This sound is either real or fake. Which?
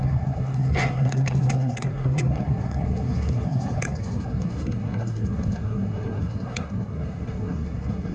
fake